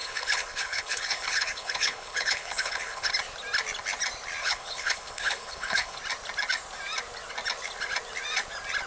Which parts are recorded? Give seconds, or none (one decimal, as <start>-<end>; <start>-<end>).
3.1-4.4; 6.0-8.9